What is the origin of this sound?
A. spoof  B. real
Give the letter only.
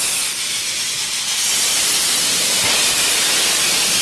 B